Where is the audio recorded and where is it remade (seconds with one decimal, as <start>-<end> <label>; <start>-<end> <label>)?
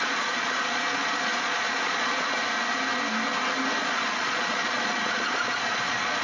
0.0-2.4 remade; 2.4-3.8 recorded; 3.8-6.2 remade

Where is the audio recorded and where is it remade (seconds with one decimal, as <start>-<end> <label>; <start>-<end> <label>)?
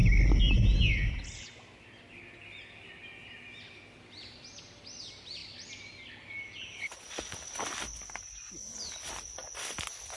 0.0-10.2 recorded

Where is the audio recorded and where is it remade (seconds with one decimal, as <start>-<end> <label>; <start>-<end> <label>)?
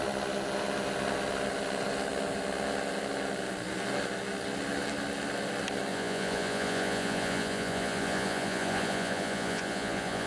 0.0-5.9 recorded; 5.9-10.3 remade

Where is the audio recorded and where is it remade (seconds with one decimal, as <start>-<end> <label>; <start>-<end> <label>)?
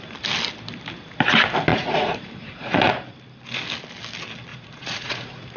0.0-1.7 recorded; 1.7-2.9 remade; 2.9-4.5 recorded; 4.5-5.6 remade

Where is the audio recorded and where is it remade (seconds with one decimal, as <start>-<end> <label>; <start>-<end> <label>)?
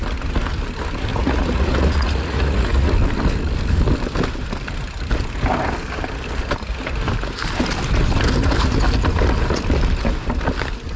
0.0-1.1 recorded; 1.1-2.9 remade; 2.9-11.0 recorded